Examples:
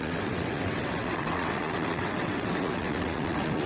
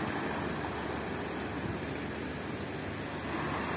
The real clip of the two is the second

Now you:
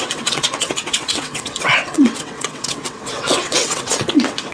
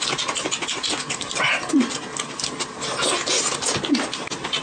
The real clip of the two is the second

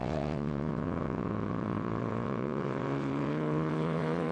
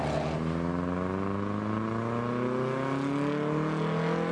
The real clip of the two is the second